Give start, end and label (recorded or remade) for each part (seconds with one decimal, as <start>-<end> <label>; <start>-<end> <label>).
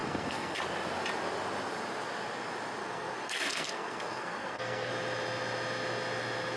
0.0-0.6 remade; 0.6-2.8 recorded; 2.8-4.9 remade; 4.9-6.6 recorded